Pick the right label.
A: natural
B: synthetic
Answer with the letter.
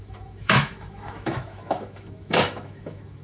B